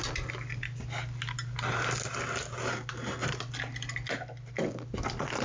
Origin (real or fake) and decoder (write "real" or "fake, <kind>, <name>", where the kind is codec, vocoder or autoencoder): real